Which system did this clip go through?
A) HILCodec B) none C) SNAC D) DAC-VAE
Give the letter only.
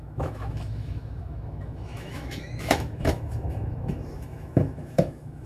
D